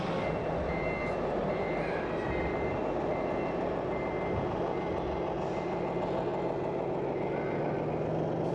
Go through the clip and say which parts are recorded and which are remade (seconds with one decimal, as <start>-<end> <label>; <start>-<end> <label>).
0.0-8.5 recorded